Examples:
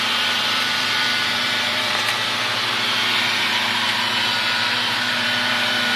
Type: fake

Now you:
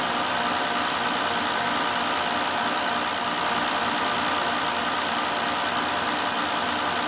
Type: real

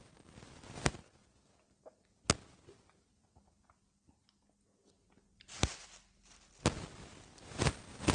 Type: real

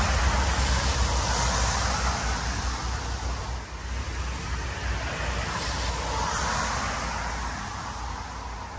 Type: real